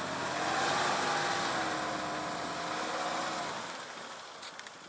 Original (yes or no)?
yes